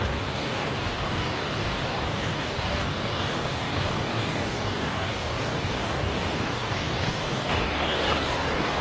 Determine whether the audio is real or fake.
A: fake